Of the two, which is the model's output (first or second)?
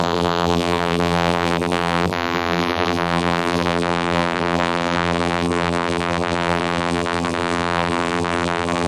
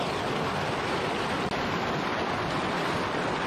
first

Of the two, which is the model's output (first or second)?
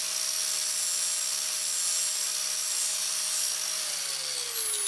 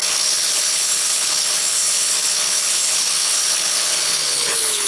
second